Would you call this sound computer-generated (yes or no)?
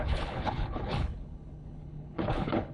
yes